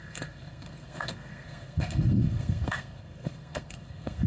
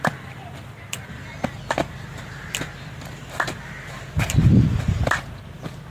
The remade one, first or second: first